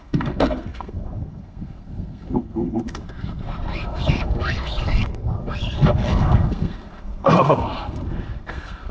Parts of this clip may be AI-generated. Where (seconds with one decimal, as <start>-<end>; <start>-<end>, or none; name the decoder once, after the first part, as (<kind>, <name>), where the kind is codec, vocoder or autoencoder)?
0.0-8.9 (codec, SNAC)